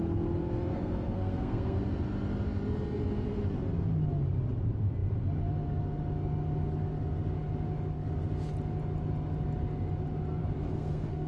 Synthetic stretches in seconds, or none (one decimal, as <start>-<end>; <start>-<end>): 0.7-1.8; 10.4-11.3